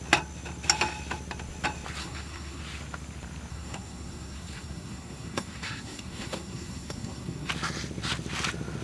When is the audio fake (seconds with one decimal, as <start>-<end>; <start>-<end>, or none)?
2.0-2.6; 3.5-7.5